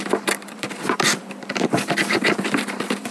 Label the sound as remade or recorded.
remade